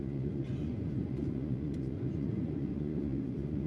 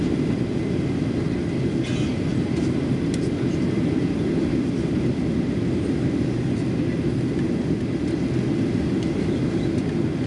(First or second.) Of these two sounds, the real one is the second